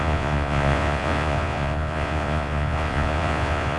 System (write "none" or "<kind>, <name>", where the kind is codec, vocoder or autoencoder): vocoder, Vocos